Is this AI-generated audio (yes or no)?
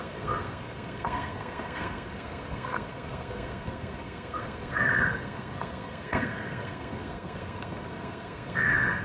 yes